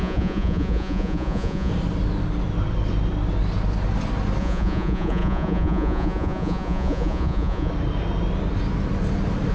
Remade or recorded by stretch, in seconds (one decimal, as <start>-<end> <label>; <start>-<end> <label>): 0.0-1.7 remade; 1.7-4.4 recorded; 4.4-7.7 remade; 7.7-9.5 recorded

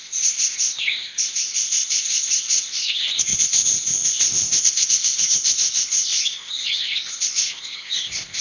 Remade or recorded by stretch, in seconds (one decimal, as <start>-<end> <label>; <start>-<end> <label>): 0.0-8.4 remade